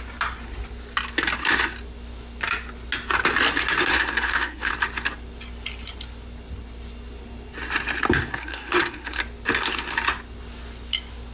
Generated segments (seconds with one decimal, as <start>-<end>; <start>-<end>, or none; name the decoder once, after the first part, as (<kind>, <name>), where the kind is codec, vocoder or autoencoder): 3.9-4.7 (codec, SNAC); 8.3-9.2